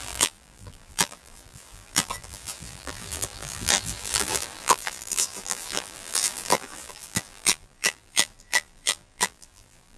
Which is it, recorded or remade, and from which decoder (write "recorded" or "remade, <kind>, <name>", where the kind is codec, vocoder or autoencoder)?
remade, vocoder, BigVGAN v2